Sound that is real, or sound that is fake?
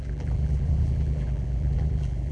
fake